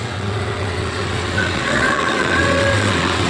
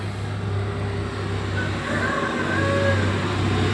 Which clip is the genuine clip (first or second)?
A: second